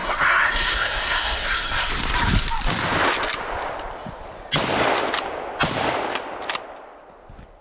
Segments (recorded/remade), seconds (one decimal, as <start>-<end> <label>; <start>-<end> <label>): 0.0-1.9 remade; 1.9-7.6 recorded